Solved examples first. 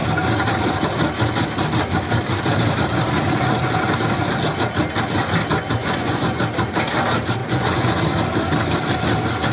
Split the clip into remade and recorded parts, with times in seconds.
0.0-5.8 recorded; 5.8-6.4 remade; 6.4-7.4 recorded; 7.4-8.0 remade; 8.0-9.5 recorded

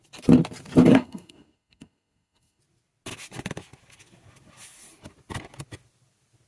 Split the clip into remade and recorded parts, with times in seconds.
0.0-0.9 recorded; 0.9-2.6 remade; 2.6-6.5 recorded